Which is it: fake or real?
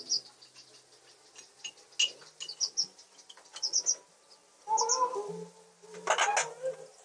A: real